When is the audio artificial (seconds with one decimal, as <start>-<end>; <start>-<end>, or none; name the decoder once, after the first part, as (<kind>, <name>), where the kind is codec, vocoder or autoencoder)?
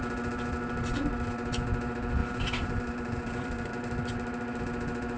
2.2-3.7 (vocoder, BigVGAN v2)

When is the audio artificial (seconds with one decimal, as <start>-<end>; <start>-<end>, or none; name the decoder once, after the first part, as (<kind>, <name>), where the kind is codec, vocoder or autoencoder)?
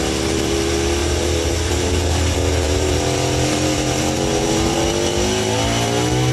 1.0-2.9 (vocoder, BigVGAN v2); 4.3-4.9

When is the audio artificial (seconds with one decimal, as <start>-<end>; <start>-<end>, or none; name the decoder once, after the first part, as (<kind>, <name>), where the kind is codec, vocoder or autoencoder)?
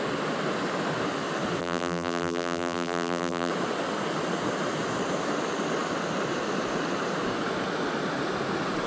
1.6-3.5 (vocoder, BigVGAN v2)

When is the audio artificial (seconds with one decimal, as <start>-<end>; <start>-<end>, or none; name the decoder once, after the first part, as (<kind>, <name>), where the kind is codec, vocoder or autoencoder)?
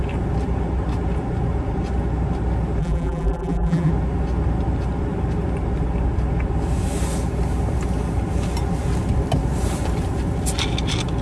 2.8-3.9 (vocoder, BigVGAN v2)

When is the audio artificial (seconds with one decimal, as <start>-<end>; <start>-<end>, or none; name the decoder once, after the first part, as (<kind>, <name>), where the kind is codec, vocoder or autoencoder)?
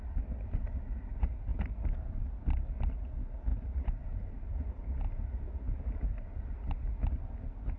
1.5-2.2 (vocoder, BigVGAN v2); 3.5-6.3